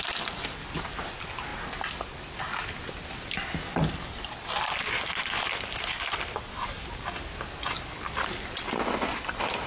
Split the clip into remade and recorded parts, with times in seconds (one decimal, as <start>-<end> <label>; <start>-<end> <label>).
0.0-9.7 recorded